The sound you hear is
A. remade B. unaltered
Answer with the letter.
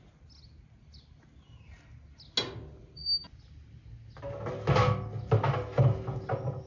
B